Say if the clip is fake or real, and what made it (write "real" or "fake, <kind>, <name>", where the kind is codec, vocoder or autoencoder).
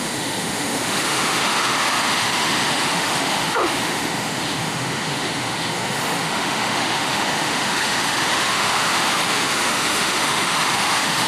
fake, autoencoder, DAC-VAE